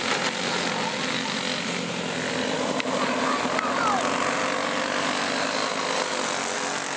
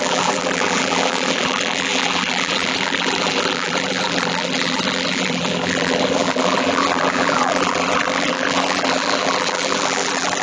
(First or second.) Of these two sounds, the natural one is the first